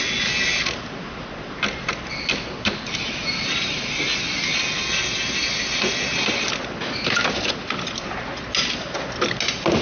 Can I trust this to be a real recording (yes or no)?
yes